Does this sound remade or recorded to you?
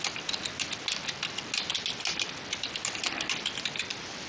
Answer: recorded